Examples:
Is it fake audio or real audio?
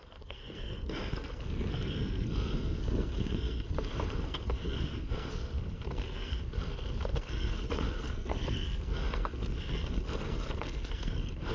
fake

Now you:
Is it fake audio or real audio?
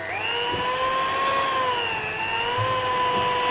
real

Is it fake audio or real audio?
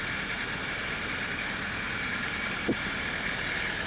fake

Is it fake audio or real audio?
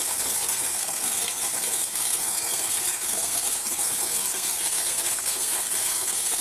fake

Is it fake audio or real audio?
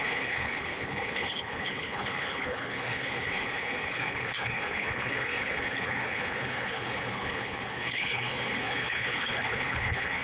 fake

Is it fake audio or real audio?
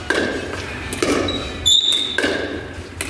real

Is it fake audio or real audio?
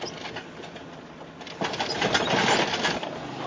real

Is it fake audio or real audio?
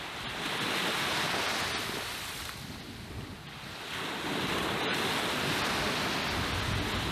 real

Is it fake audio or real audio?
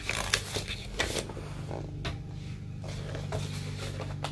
real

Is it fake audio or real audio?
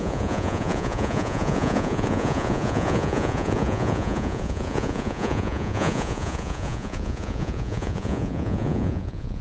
fake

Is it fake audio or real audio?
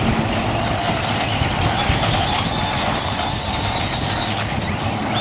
real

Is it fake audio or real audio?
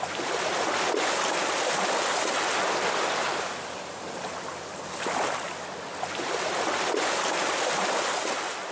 real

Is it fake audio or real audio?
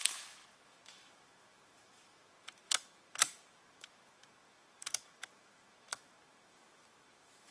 fake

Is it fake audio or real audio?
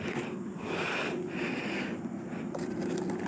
real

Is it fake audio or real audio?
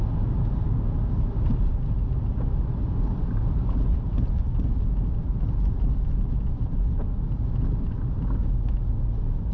real